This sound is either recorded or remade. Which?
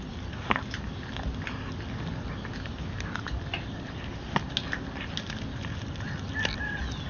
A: recorded